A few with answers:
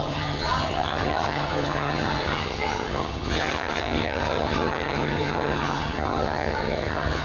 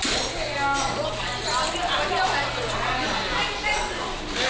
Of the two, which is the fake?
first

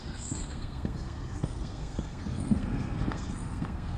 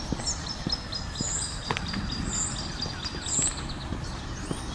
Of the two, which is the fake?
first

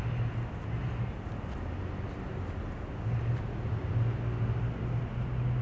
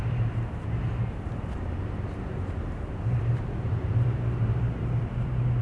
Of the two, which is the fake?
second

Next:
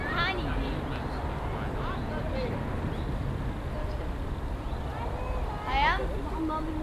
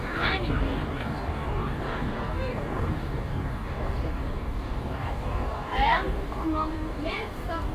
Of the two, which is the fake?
second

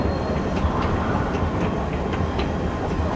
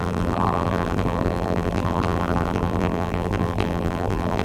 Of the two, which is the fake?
second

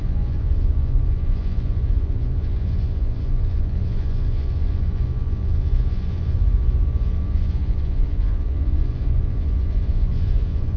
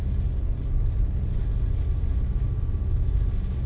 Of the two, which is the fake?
first